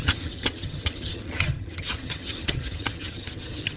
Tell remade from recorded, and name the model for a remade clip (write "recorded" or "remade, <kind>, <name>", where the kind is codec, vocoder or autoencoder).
remade, vocoder, HiFi-GAN